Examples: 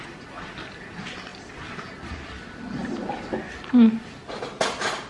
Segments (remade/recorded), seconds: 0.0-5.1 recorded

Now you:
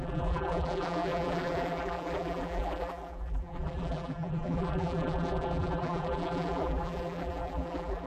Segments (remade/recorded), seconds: 0.0-8.1 remade

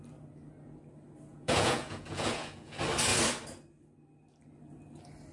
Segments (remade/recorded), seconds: 0.0-1.3 recorded; 1.3-2.7 remade; 2.7-5.3 recorded

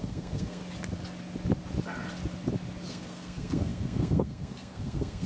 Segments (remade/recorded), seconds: 0.0-0.6 remade; 0.6-2.9 recorded; 2.9-5.3 remade

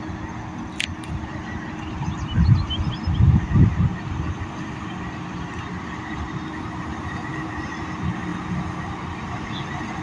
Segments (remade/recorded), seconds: 0.0-7.3 recorded; 7.3-7.8 remade; 7.8-10.0 recorded

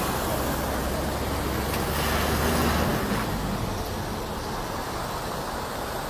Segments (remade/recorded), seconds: 0.0-6.1 recorded

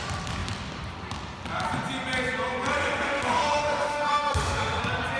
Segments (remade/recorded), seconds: 0.0-2.7 recorded; 2.7-4.8 remade; 4.8-5.2 recorded